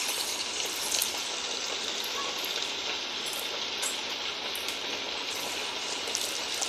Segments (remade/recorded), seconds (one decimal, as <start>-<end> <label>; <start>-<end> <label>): 0.0-6.7 recorded